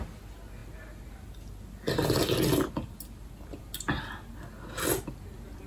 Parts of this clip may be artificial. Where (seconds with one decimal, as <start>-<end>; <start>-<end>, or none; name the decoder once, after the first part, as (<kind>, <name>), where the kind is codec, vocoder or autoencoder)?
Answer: none